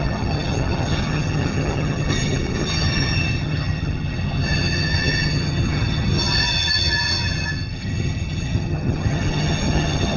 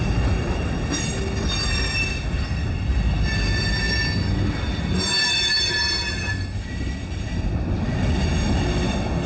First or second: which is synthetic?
first